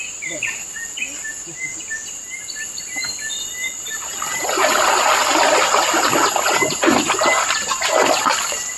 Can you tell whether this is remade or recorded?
recorded